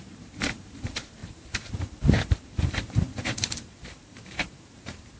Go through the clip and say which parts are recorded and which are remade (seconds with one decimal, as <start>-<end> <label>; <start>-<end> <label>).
0.0-5.2 remade